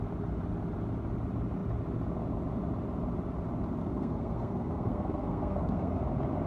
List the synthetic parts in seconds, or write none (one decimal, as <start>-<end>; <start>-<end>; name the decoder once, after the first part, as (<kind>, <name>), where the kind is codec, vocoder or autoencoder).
3.8-6.0 (codec, SNAC)